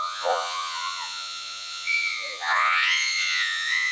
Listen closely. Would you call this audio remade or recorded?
remade